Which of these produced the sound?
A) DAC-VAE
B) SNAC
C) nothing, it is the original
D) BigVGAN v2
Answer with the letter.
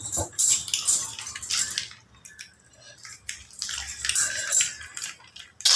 C